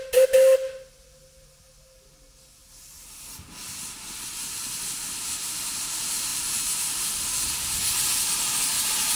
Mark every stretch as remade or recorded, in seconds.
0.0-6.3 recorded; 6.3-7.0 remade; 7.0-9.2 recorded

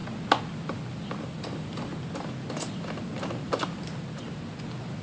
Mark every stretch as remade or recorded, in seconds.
0.0-1.2 recorded; 1.2-1.9 remade; 1.9-5.0 recorded

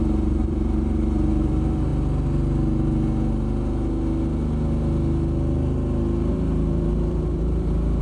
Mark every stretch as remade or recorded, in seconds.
0.0-1.9 remade; 1.9-6.3 recorded; 6.3-8.0 remade

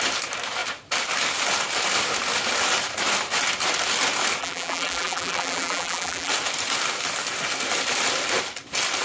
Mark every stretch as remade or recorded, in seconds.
0.0-4.4 recorded; 4.4-6.3 remade; 6.3-9.0 recorded

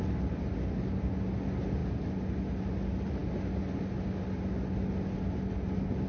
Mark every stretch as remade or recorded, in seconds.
0.0-0.5 remade; 0.5-6.1 recorded